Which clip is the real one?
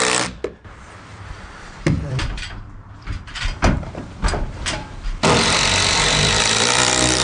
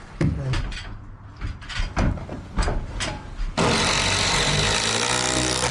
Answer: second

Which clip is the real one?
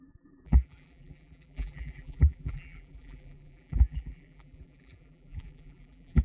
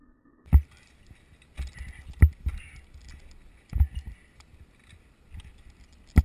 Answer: second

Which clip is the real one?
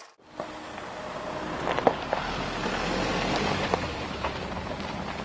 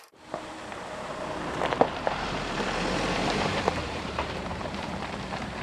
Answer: first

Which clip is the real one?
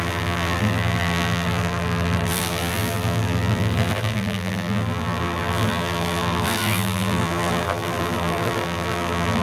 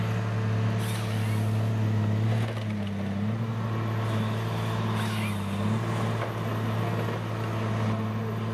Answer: second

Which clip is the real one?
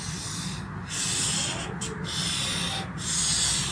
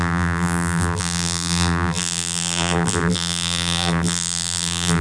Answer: first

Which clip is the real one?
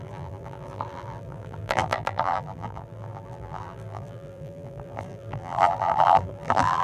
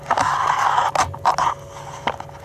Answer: second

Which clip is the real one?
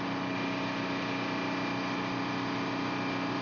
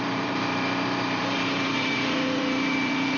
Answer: first